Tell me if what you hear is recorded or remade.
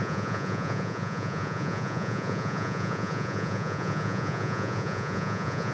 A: remade